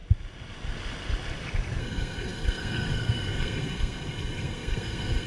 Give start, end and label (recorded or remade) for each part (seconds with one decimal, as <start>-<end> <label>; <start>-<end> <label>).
0.0-1.8 recorded; 1.8-5.3 remade